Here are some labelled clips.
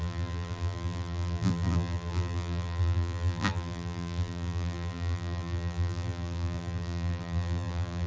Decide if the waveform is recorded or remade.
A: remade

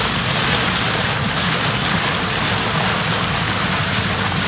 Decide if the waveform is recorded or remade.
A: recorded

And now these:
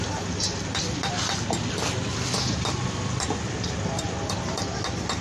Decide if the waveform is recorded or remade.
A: recorded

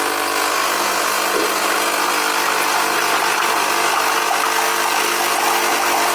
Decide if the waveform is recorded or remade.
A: recorded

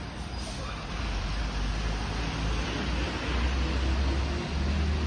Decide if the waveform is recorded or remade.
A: recorded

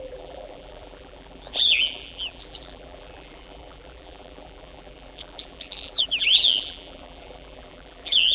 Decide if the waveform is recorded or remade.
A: remade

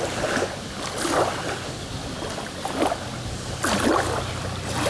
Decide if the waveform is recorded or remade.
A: recorded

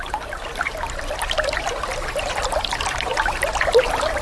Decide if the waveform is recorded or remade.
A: remade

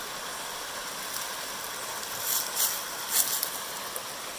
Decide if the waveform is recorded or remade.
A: recorded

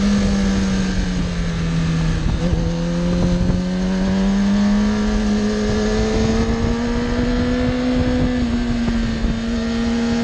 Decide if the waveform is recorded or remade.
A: recorded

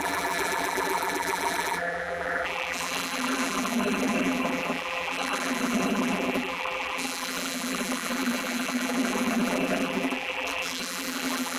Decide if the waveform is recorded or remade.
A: remade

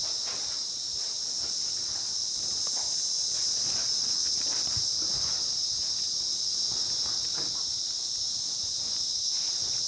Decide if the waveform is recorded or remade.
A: recorded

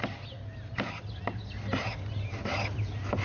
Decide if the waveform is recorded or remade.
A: recorded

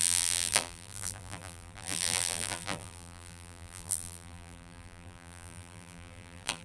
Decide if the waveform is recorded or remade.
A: remade